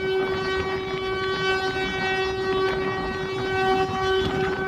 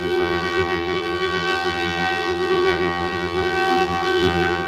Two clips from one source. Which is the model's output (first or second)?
second